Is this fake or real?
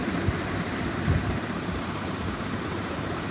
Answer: fake